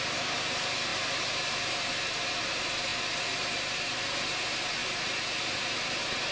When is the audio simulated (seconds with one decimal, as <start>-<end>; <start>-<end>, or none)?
none